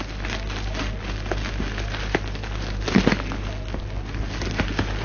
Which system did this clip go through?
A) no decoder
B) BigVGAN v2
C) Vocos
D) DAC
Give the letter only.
A